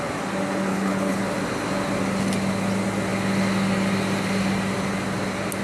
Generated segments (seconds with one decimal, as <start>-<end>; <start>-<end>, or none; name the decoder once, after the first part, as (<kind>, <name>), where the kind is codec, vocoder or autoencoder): 0.7-1.2 (codec, HILCodec)